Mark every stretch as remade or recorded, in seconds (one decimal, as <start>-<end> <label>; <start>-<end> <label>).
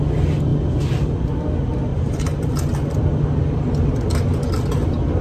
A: 0.0-1.9 recorded; 1.9-2.5 remade; 2.5-5.2 recorded